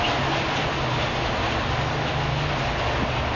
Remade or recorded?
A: recorded